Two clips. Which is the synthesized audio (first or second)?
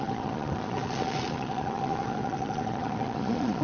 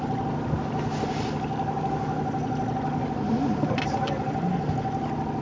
first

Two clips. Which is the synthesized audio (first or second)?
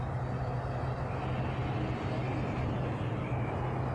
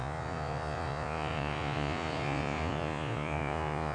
second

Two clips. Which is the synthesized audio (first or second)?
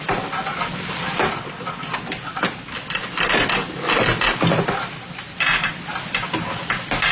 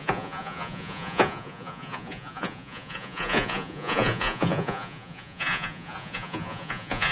second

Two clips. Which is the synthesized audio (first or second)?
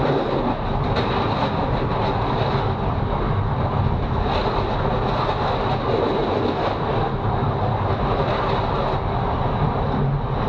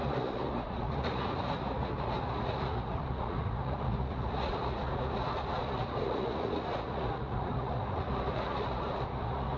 second